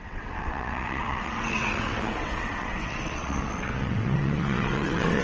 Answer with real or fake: fake